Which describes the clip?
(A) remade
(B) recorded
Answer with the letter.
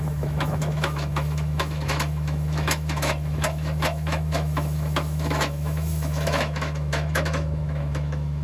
A